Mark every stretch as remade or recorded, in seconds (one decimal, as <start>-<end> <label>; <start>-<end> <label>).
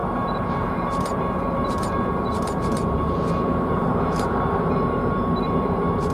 0.0-6.1 remade